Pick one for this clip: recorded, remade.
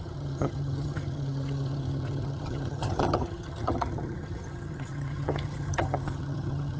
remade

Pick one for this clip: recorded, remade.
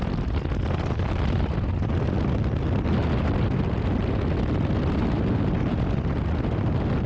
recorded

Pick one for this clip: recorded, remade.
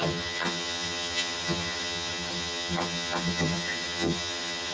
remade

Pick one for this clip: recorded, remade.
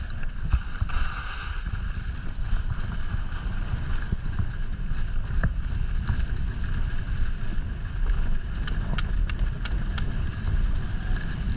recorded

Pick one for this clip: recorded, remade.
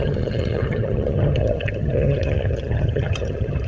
remade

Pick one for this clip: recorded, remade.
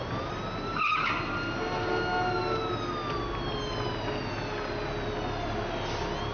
recorded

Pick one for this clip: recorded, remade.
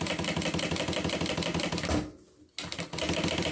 recorded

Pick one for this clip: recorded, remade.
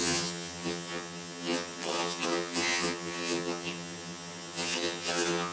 remade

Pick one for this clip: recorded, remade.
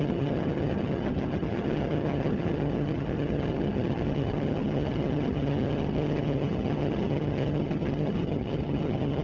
remade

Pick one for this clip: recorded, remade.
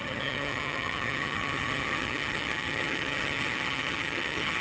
remade